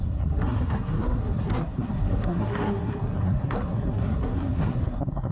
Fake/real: fake